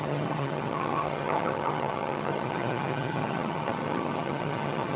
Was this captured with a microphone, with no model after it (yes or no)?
no